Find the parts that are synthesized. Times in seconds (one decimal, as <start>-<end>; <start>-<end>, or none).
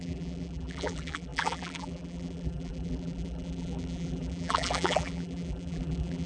0.0-6.3